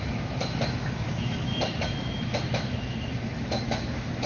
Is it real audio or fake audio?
fake